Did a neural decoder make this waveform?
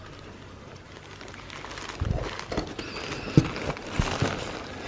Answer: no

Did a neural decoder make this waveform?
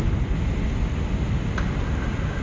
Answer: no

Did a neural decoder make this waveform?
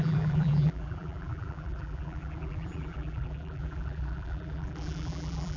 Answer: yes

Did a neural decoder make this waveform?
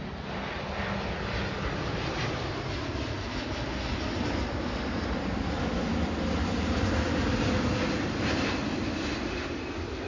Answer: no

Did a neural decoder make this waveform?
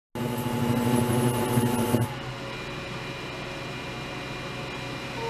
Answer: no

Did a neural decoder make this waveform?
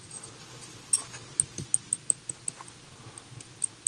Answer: no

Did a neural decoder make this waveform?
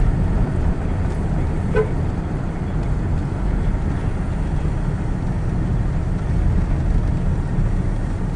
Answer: no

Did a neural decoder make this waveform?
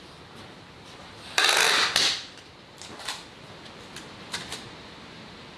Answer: no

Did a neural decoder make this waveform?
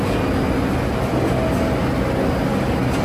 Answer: no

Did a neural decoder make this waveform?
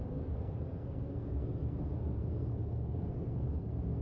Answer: yes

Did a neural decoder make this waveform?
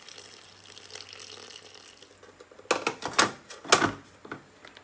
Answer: no